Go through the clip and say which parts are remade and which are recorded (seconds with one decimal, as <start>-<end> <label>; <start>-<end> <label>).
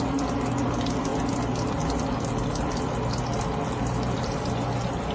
0.0-5.1 recorded